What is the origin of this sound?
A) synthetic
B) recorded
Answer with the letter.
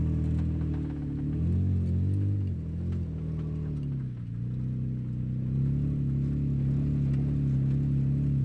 B